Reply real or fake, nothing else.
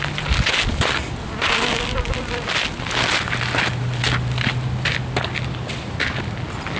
real